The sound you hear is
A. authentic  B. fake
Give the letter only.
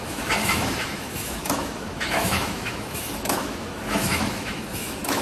B